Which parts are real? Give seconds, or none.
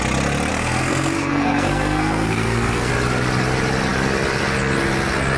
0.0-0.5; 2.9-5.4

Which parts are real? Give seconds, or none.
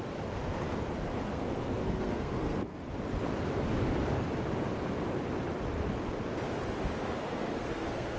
0.0-1.3; 2.8-7.0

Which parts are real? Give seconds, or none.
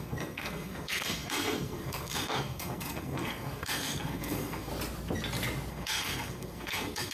4.7-5.7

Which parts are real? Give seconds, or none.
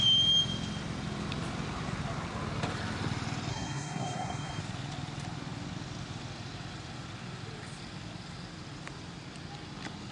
0.0-3.5; 4.6-10.1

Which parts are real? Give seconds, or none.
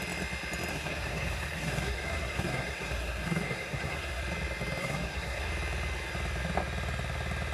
0.0-0.7; 4.2-4.8; 5.5-7.5